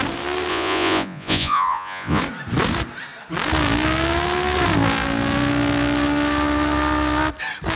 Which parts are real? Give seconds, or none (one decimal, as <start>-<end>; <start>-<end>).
0.0-0.5; 2.2-7.8